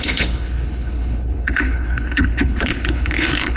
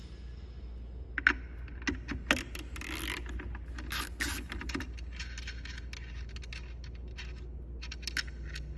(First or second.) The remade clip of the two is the first